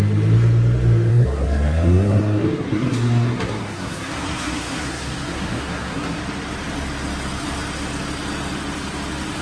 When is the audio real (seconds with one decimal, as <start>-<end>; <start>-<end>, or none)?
0.0-1.1; 6.2-9.4